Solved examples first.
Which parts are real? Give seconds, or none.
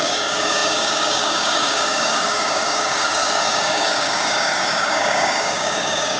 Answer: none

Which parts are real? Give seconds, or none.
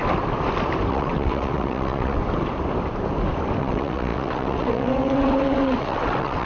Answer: 0.0-0.9; 2.2-3.6